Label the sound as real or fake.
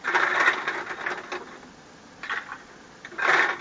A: real